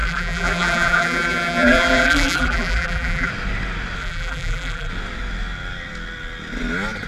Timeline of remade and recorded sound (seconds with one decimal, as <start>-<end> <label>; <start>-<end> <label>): 0.0-3.3 remade; 3.3-4.0 recorded; 4.0-4.9 remade; 4.9-7.1 recorded